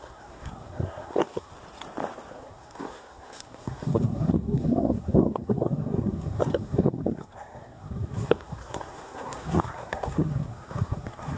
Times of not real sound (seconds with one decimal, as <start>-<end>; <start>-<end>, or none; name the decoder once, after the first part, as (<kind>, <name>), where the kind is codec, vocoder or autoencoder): 0.0-1.5 (codec, SNAC); 2.3-11.4